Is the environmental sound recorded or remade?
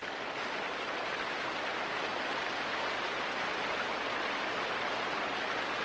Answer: recorded